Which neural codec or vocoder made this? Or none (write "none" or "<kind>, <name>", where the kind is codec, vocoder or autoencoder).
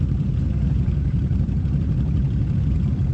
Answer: vocoder, BigVGAN v2